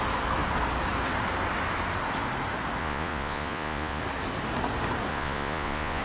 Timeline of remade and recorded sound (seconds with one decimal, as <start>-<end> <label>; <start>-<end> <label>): 0.0-2.8 recorded; 2.8-4.0 remade; 4.0-5.1 recorded; 5.1-6.0 remade